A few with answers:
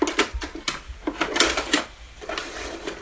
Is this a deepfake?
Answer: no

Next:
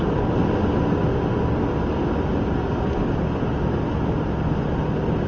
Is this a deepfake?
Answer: no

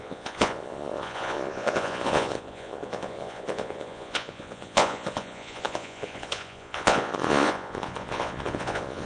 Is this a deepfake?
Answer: yes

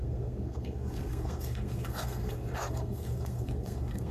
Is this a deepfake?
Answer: yes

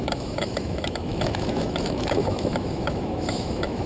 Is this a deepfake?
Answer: yes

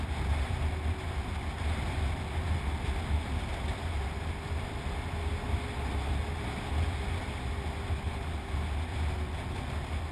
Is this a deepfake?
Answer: no